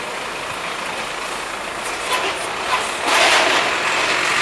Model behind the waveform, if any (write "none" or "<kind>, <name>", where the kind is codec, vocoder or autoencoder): none